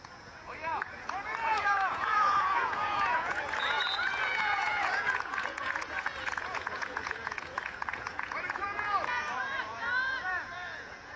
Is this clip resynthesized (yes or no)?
yes